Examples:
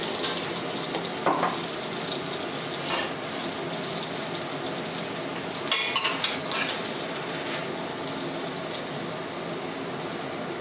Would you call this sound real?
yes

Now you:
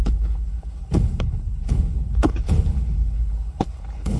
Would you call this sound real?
no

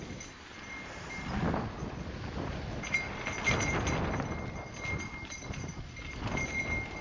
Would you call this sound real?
yes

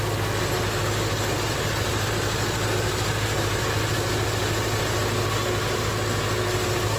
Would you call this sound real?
yes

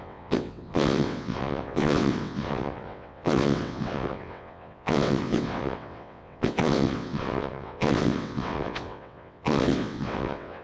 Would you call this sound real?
no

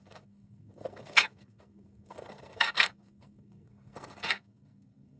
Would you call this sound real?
no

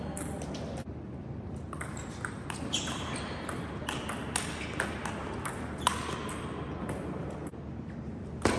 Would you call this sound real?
yes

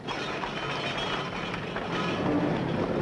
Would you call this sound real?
yes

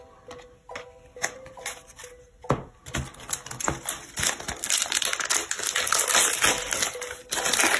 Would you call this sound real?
yes